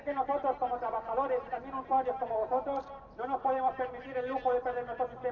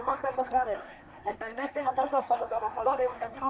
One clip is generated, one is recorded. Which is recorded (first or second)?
first